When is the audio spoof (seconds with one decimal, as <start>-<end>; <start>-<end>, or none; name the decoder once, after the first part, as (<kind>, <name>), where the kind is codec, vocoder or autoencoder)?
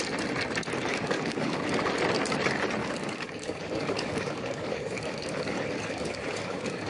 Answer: 0.9-1.6 (codec, DAC); 2.8-6.9